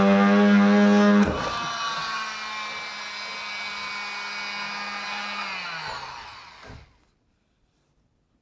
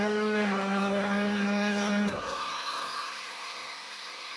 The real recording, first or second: first